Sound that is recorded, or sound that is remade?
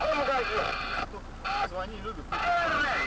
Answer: recorded